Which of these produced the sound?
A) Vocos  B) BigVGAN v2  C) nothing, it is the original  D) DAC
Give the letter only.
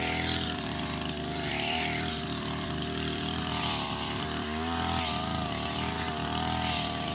B